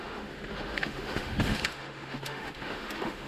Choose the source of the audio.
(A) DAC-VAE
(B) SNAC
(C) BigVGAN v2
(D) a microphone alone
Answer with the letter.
A